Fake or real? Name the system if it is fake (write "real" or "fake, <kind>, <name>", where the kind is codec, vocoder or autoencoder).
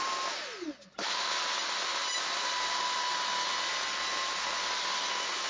real